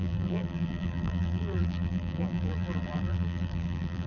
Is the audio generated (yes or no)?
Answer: yes